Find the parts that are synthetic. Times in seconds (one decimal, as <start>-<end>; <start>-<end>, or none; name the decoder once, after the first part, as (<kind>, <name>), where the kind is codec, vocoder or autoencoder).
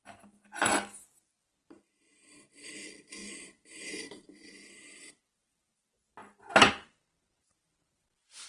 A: 3.2-5.2 (vocoder, BigVGAN v2)